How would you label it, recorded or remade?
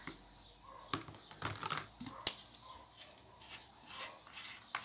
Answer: recorded